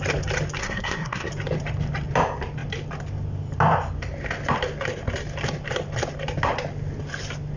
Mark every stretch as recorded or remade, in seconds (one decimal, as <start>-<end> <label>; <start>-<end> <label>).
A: 0.0-0.6 recorded; 0.6-1.3 remade; 1.3-7.6 recorded